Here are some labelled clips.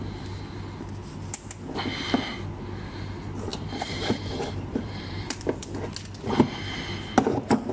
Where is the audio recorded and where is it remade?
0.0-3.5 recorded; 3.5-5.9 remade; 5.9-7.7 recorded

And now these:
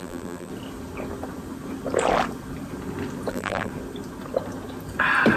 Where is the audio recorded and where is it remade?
0.0-0.5 remade; 0.5-3.3 recorded; 3.3-3.7 remade; 3.7-5.4 recorded

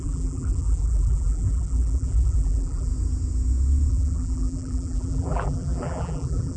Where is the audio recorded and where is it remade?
0.0-2.9 remade; 2.9-3.9 recorded; 3.9-6.6 remade

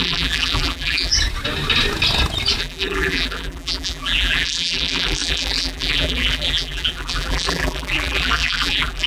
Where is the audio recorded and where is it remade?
0.0-1.1 remade; 1.1-2.6 recorded; 2.6-9.1 remade

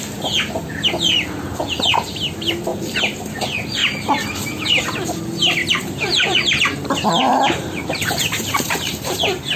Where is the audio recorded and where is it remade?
0.0-2.7 recorded; 2.7-3.3 remade; 3.3-3.8 recorded; 3.8-4.8 remade; 4.8-5.6 recorded; 5.6-9.2 remade; 9.2-9.6 recorded

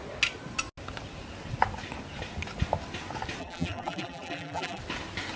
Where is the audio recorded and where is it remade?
0.0-3.4 recorded; 3.4-4.8 remade; 4.8-5.4 recorded

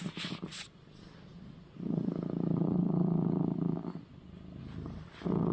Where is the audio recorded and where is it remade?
0.0-5.5 recorded

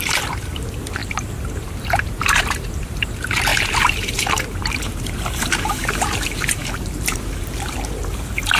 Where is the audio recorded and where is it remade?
0.0-8.6 remade